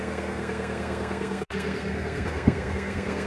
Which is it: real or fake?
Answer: fake